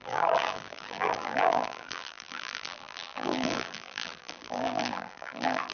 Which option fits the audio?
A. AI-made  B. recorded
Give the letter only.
A